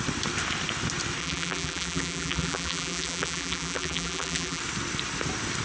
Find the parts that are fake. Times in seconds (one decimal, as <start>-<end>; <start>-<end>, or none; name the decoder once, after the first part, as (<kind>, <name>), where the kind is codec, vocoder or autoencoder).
1.2-4.6 (vocoder, BigVGAN v2)